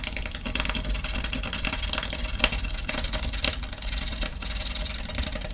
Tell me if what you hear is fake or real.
fake